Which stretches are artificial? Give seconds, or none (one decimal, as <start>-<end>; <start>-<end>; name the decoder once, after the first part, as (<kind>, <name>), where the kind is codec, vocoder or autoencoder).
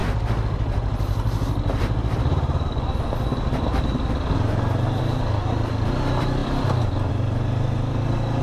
none